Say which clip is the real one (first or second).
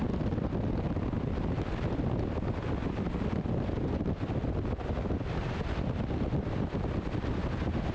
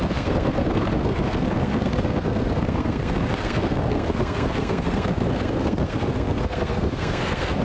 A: first